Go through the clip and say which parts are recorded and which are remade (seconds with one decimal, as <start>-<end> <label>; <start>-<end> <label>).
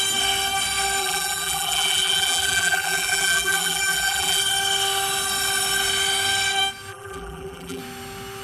0.0-1.0 recorded; 1.0-4.4 remade; 4.4-6.9 recorded; 6.9-7.8 remade; 7.8-8.4 recorded